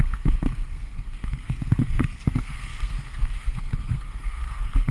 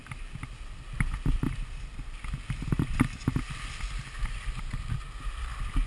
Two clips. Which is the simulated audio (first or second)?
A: first